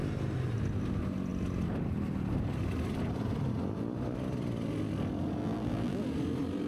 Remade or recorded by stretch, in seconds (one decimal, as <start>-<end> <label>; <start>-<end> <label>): 0.0-5.4 recorded; 5.4-6.0 remade; 6.0-6.7 recorded